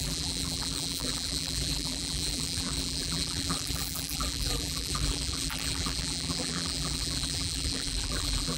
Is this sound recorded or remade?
remade